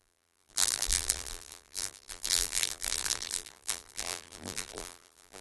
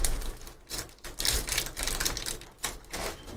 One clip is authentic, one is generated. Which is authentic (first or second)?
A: second